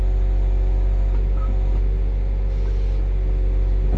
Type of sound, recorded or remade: recorded